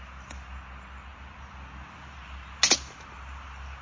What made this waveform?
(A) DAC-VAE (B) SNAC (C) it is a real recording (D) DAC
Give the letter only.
C